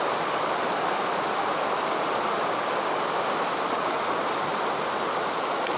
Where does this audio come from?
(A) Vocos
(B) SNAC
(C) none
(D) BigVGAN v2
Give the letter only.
C